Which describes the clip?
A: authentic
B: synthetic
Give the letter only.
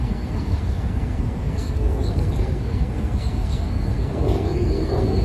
B